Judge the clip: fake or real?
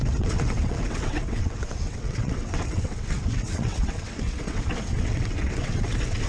fake